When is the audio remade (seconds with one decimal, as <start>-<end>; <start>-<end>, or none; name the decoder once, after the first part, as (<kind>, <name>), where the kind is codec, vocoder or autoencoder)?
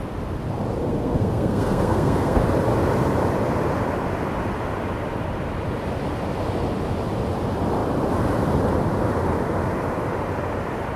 0.8-2.4 (codec, SNAC)